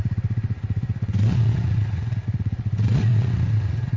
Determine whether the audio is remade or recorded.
remade